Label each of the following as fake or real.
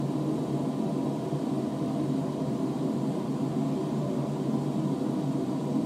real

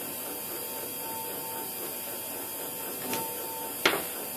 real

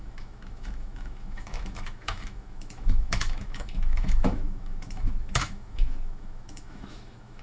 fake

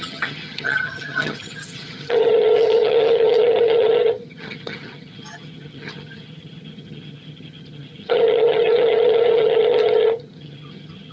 fake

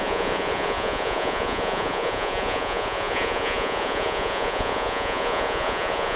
fake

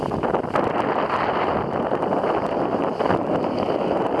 real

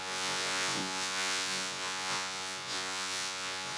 fake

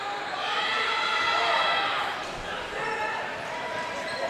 fake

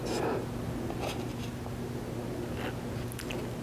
real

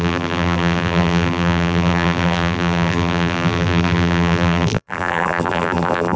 fake